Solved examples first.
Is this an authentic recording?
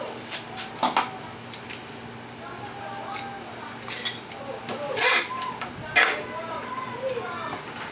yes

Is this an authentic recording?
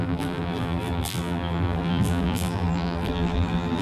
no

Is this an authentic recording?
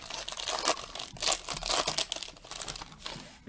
yes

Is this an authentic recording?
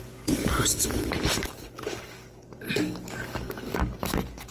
no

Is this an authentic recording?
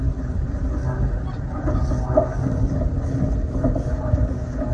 yes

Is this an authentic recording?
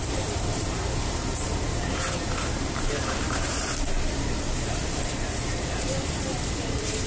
no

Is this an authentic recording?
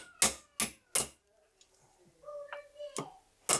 yes